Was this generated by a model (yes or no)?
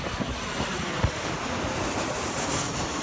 no